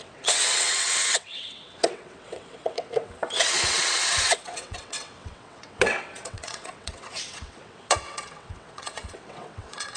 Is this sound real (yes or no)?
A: no